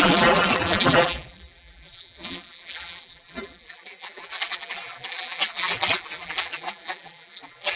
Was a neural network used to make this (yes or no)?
yes